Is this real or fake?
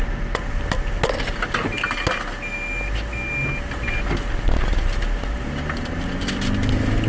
real